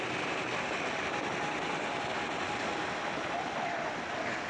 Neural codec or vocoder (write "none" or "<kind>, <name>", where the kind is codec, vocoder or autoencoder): none